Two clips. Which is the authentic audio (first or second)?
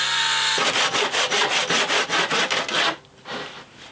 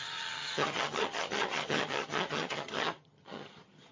first